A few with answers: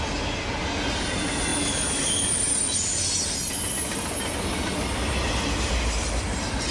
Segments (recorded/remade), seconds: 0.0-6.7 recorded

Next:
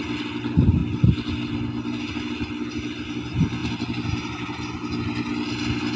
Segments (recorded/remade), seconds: 0.0-6.0 recorded